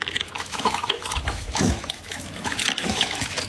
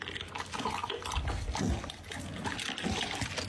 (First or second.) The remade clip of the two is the first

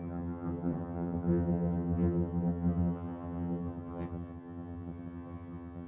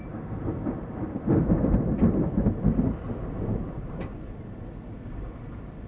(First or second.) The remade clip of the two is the first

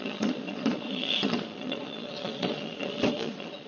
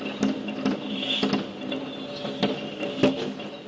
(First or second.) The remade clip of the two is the first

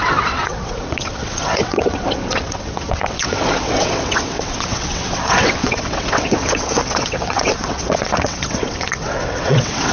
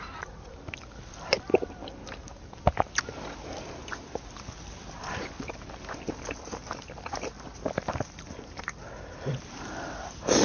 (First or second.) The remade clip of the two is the first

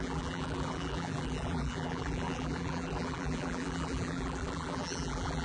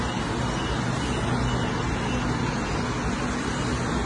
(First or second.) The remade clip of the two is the first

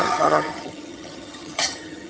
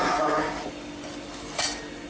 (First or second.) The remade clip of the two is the first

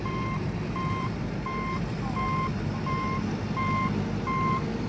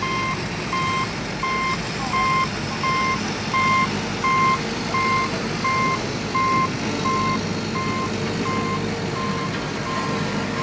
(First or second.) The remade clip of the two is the first